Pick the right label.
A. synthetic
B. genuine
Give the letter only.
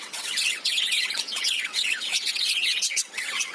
A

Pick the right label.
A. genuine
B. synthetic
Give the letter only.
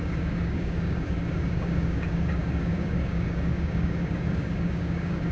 B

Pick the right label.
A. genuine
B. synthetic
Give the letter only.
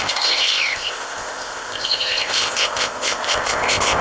B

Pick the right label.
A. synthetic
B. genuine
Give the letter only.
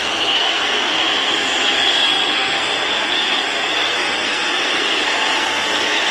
A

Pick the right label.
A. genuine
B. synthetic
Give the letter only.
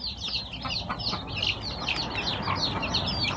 A